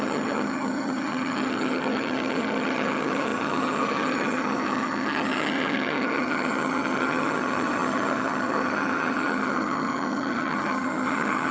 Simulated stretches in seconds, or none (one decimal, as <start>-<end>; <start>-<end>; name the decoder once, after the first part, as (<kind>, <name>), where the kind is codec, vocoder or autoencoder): 0.0-11.5 (vocoder, HiFi-GAN)

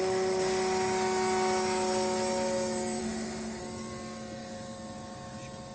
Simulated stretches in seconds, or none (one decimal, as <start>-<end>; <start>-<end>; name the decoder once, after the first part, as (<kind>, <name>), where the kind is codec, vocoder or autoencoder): 3.0-3.6 (autoencoder, DAC-VAE)